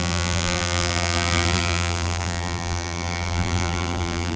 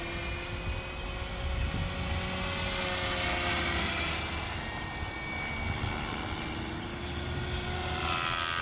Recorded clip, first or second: second